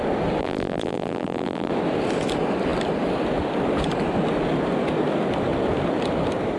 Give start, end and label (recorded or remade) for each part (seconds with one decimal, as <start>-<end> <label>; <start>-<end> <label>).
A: 0.0-0.4 recorded; 0.4-1.7 remade; 1.7-6.6 recorded